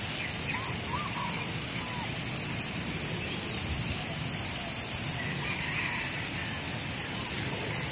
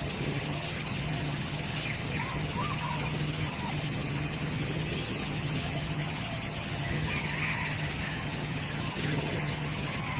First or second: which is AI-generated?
second